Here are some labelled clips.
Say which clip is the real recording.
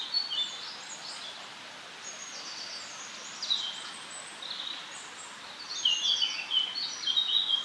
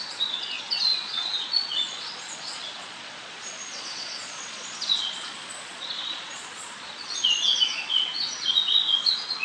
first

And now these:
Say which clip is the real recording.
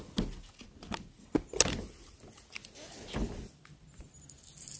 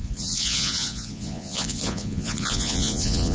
first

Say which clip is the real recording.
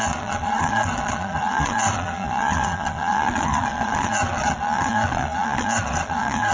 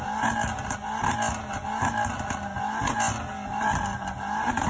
second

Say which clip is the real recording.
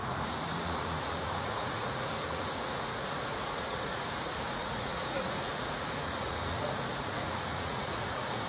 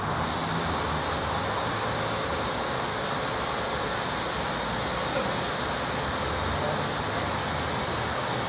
second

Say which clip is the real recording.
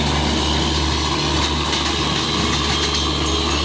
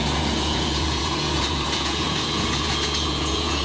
first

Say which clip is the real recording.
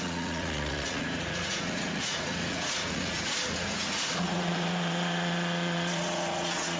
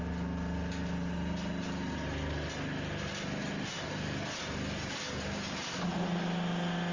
second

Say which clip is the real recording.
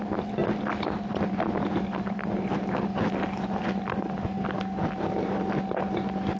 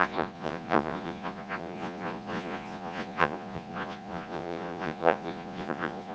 first